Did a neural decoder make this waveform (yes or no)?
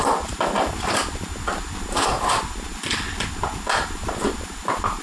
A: no